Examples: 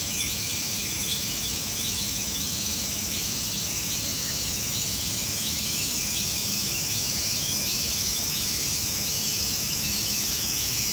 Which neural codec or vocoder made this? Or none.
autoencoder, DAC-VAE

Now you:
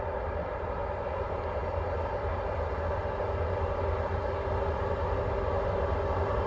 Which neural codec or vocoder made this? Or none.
none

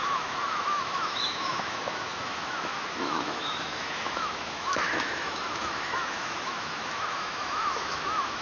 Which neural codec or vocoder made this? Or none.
autoencoder, DAC-VAE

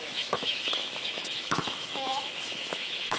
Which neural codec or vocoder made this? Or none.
autoencoder, DAC-VAE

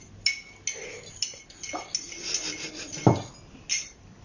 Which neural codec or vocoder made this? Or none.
none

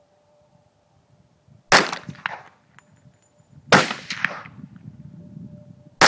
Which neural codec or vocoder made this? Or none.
none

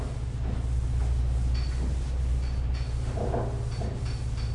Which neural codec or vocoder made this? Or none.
none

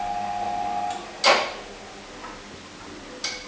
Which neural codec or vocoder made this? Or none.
none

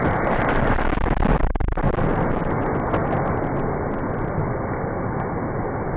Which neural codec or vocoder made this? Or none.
none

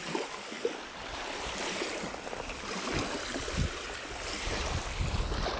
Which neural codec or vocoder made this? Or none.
none